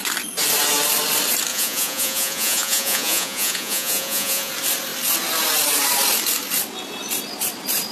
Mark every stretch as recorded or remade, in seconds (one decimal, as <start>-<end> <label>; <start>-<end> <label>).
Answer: 0.0-1.5 recorded; 1.5-4.5 remade; 4.5-7.9 recorded